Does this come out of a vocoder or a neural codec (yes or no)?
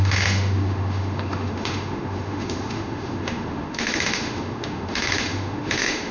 yes